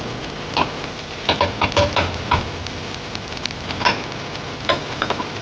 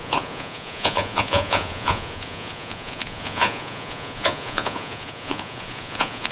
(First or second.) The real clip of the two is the first